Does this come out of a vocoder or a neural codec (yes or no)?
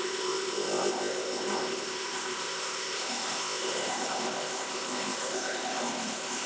yes